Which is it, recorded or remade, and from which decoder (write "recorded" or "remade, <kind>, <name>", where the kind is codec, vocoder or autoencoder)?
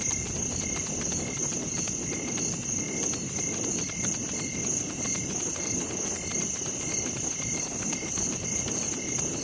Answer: recorded